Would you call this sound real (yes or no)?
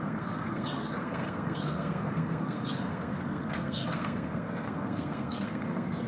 no